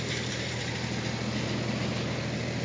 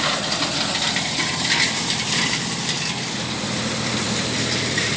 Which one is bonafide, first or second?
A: first